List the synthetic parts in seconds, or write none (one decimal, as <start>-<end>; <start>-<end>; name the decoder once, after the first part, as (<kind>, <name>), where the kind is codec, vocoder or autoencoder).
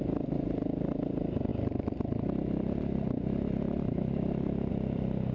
none